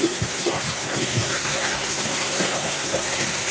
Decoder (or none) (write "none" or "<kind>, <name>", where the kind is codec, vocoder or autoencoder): codec, SNAC